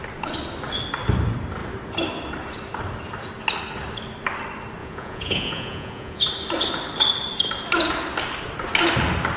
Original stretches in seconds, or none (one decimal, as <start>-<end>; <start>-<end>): 0.0-4.8; 6.2-9.4